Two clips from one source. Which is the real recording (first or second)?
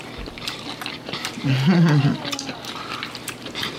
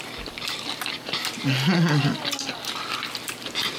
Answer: second